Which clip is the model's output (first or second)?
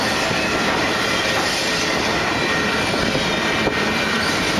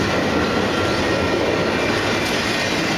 first